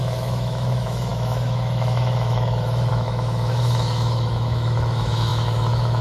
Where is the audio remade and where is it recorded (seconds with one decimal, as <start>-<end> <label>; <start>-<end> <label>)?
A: 0.0-6.0 remade